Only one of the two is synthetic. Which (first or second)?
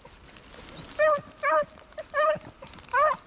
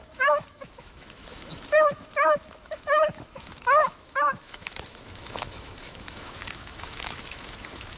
second